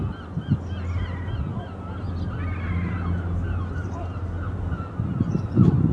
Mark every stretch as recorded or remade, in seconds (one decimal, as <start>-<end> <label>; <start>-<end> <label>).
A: 0.0-5.9 recorded